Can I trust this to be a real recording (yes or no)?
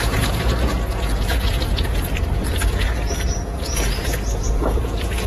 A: no